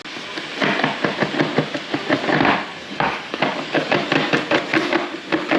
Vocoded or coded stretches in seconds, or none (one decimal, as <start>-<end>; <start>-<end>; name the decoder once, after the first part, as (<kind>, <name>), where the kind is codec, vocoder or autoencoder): 2.7-3.9 (codec, DAC)